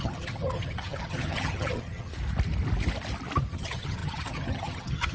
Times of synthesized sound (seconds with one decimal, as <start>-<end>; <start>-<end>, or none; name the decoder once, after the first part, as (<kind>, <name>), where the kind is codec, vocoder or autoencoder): 0.0-2.1 (vocoder, HiFi-GAN); 3.5-5.1